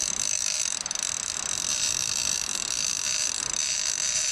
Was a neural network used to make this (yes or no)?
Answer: yes